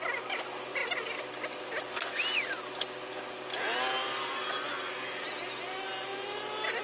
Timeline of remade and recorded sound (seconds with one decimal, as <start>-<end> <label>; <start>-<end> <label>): 0.0-6.8 recorded